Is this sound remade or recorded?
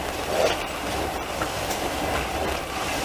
remade